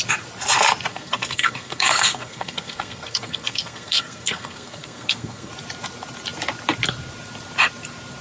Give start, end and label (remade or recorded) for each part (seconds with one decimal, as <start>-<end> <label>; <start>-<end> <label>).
0.0-0.9 recorded; 0.9-5.5 remade; 5.5-8.2 recorded